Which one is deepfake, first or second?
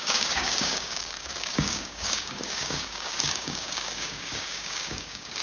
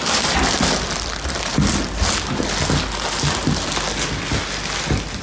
first